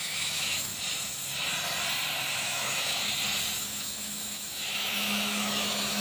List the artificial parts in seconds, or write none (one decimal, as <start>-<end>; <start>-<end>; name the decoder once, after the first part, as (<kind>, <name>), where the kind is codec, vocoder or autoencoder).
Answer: 0.0-0.7 (autoencoder, DAC-VAE); 2.3-3.1; 3.6-6.0

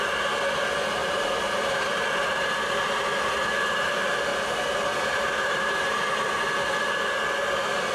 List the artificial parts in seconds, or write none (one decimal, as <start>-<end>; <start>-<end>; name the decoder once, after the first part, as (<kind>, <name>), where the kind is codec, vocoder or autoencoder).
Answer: 1.0-2.5 (vocoder, BigVGAN v2); 4.3-6.4

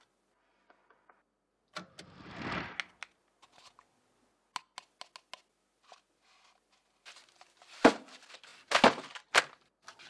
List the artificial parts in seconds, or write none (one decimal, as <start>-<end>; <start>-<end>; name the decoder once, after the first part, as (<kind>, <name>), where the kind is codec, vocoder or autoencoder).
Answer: none